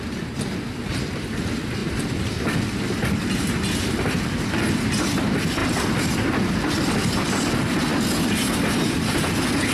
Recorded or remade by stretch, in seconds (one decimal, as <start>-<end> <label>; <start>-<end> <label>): 0.0-9.7 recorded